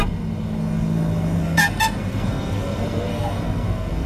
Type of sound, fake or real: fake